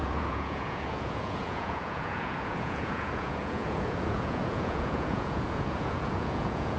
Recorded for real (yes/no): no